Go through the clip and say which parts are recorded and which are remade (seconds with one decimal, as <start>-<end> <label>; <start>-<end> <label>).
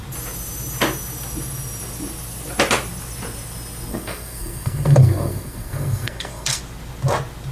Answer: 0.0-3.9 recorded; 3.9-6.6 remade; 6.6-7.5 recorded